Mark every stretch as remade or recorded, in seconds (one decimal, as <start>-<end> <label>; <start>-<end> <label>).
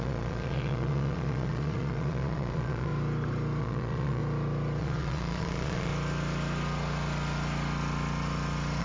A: 0.0-2.9 remade; 2.9-3.6 recorded; 3.6-4.2 remade; 4.2-4.8 recorded; 4.8-5.9 remade; 5.9-8.8 recorded